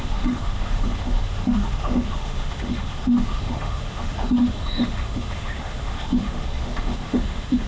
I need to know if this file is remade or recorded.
remade